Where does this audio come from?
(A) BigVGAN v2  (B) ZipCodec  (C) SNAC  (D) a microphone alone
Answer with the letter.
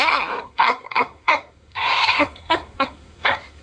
C